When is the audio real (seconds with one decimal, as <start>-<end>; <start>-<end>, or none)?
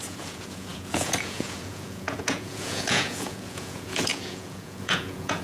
none